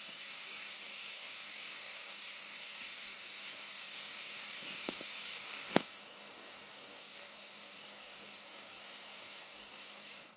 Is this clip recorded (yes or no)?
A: no